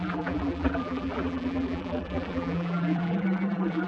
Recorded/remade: remade